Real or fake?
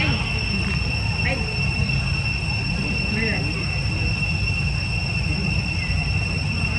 real